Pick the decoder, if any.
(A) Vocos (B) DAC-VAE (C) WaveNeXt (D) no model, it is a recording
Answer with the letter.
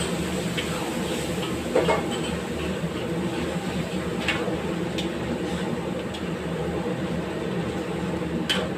D